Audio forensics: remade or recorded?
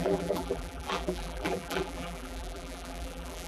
remade